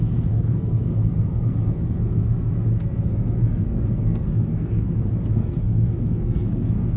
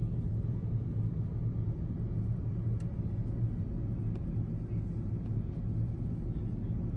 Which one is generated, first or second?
first